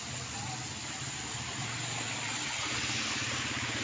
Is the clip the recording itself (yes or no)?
yes